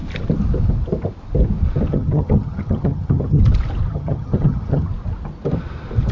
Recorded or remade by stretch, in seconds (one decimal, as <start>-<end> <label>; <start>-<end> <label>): 0.0-1.9 recorded; 1.9-3.4 remade; 3.4-3.9 recorded; 3.9-4.9 remade; 4.9-6.1 recorded